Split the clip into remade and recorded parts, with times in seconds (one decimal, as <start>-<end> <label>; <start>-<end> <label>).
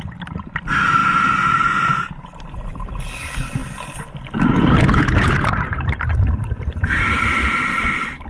0.0-3.6 recorded; 3.6-8.3 remade